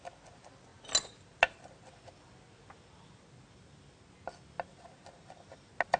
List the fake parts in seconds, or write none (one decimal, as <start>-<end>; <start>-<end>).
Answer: none